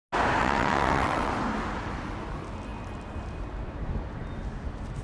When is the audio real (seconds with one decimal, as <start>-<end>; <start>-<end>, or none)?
0.0-0.4; 1.3-5.0